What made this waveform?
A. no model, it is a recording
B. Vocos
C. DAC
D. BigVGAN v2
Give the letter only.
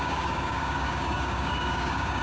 C